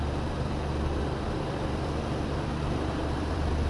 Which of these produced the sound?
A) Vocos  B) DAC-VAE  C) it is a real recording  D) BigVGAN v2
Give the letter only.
D